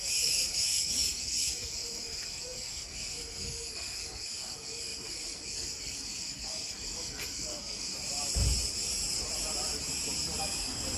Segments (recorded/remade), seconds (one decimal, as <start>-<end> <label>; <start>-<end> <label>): 0.0-7.9 remade; 7.9-10.4 recorded; 10.4-11.0 remade